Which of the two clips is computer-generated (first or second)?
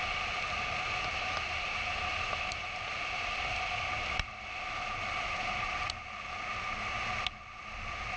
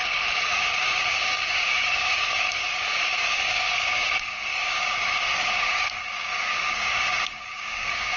second